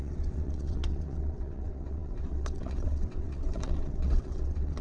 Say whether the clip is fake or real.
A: fake